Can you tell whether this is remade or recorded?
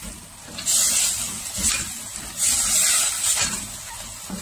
recorded